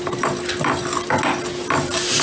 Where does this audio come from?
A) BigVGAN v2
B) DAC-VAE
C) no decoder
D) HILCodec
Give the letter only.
C